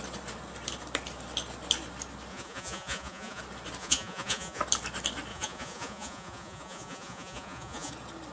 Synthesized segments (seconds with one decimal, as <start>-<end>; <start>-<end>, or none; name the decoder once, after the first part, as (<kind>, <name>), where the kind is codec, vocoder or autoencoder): 2.3-3.4 (vocoder, Vocos); 3.8-4.6; 5.3-7.9